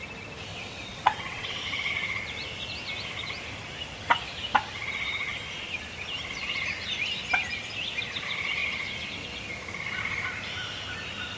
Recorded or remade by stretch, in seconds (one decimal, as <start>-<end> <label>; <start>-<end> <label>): 0.0-0.5 recorded; 0.5-1.9 remade; 1.9-11.4 recorded